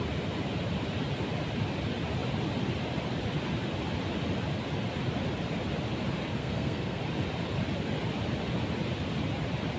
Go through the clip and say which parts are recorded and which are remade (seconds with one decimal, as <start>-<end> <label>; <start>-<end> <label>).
0.0-6.4 recorded; 6.4-7.0 remade; 7.0-9.8 recorded

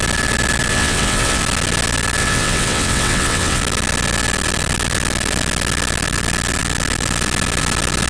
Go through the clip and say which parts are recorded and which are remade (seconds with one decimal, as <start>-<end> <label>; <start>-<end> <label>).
0.0-0.7 recorded; 0.7-1.4 remade; 1.4-2.2 recorded; 2.2-3.6 remade; 3.6-8.1 recorded

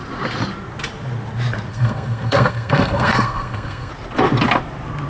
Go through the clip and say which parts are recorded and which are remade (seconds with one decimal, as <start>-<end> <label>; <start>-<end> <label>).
0.0-1.7 recorded; 1.7-3.9 remade; 3.9-5.1 recorded

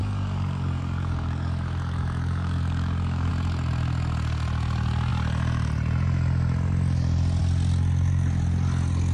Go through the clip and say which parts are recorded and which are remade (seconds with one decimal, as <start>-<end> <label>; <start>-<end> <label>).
0.0-3.3 remade; 3.3-9.1 recorded

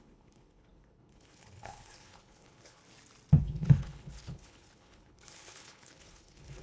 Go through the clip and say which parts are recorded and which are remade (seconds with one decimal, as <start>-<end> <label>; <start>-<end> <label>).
0.0-2.8 remade; 2.8-3.4 recorded; 3.4-6.6 remade

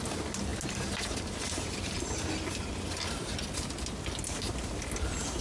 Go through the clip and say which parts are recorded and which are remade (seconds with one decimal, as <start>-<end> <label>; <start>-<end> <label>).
0.0-5.4 recorded

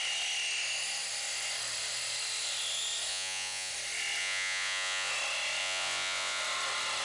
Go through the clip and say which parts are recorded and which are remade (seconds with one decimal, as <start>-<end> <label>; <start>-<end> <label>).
0.0-3.1 recorded; 3.1-3.7 remade; 3.7-4.2 recorded; 4.2-5.1 remade; 5.1-5.6 recorded; 5.6-6.4 remade; 6.4-7.0 recorded